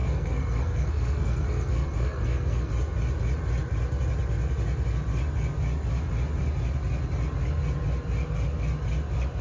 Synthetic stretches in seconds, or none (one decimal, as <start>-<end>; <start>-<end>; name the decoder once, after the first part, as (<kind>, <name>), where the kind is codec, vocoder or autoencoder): 0.0-2.7 (codec, SNAC)